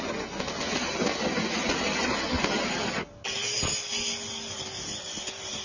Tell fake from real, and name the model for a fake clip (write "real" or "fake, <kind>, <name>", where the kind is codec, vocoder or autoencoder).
real